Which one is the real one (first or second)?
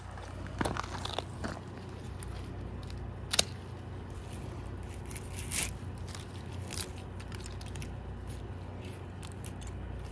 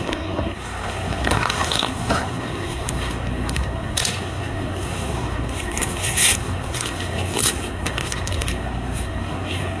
first